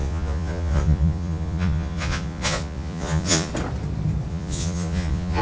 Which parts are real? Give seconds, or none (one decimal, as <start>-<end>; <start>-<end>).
3.5-4.3